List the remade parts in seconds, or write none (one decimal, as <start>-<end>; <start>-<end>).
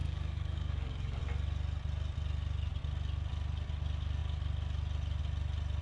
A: 0.0-1.2